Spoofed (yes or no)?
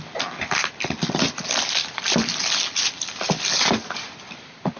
no